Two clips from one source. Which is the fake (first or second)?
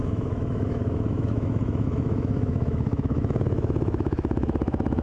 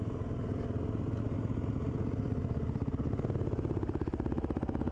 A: first